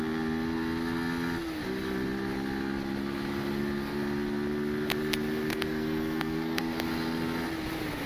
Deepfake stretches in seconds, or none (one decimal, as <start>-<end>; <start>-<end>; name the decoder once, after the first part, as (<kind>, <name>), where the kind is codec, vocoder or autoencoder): 5.5-6.6 (codec, SNAC)